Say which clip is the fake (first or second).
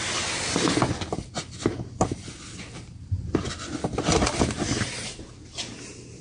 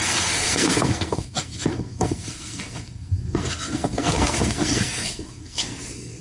second